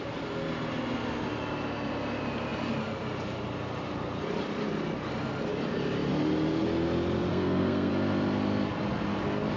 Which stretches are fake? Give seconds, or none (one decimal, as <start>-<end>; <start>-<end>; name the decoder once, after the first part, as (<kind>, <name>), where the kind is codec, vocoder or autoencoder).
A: 7.3-7.9 (codec, SNAC)